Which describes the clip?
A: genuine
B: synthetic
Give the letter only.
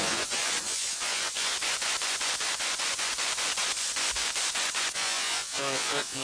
B